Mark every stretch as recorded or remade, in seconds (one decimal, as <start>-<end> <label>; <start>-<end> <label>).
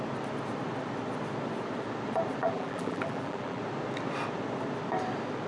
0.0-2.4 recorded; 2.4-3.6 remade; 3.6-5.5 recorded